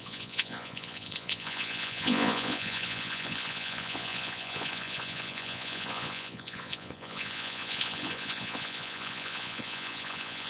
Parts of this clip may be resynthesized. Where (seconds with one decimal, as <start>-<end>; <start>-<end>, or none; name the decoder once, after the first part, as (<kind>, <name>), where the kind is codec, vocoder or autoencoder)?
0.0-10.5 (vocoder, Vocos)